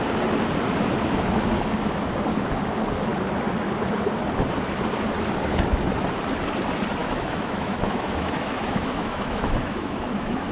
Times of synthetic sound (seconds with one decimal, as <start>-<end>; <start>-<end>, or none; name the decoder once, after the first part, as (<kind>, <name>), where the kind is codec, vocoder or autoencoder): 7.0-10.5 (autoencoder, DAC-VAE)